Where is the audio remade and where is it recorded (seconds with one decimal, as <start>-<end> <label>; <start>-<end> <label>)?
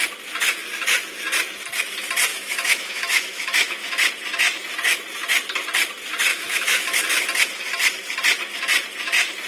0.0-2.3 recorded; 2.3-4.1 remade; 4.1-6.3 recorded; 6.3-7.0 remade; 7.0-9.5 recorded